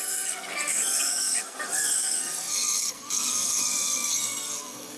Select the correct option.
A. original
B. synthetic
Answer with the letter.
B